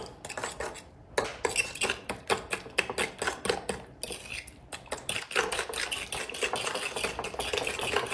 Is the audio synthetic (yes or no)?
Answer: no